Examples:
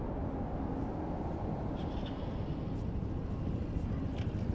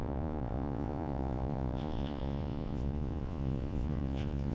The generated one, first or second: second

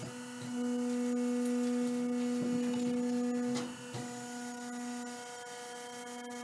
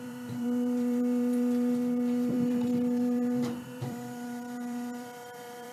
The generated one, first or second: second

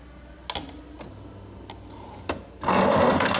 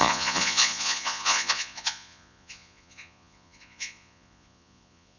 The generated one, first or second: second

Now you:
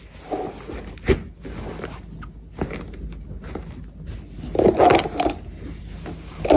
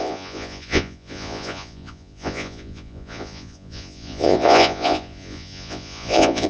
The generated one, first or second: second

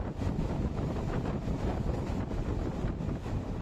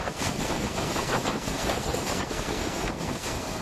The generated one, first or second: second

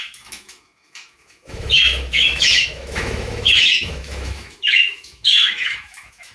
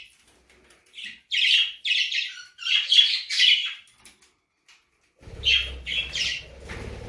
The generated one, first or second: first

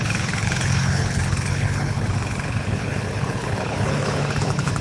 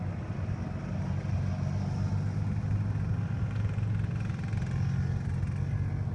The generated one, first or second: first